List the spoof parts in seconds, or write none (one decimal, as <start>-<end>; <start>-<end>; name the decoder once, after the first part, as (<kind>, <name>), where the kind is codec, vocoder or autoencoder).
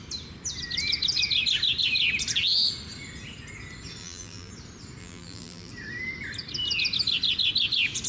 4.0-4.5 (vocoder, BigVGAN v2); 5.0-5.7